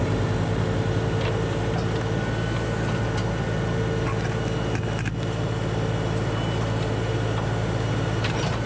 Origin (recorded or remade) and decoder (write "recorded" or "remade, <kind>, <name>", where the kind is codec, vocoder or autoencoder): recorded